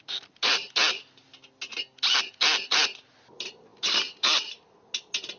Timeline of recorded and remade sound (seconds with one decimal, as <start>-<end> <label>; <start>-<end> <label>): 0.0-5.4 recorded